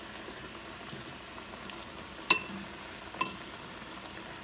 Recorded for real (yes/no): yes